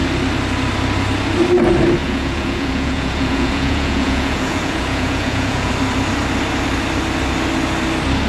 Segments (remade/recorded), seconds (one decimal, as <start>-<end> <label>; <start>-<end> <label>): 0.0-2.0 recorded; 2.0-5.7 remade; 5.7-8.3 recorded